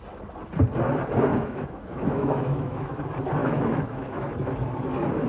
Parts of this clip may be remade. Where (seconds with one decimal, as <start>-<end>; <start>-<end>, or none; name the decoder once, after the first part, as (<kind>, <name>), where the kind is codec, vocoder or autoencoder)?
1.3-3.0 (autoencoder, DAC-VAE); 3.4-4.3